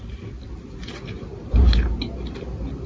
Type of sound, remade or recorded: recorded